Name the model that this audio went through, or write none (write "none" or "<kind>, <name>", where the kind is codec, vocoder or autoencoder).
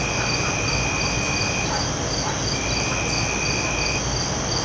none